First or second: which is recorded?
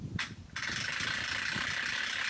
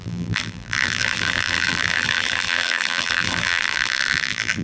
first